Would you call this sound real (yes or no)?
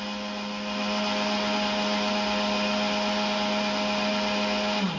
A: yes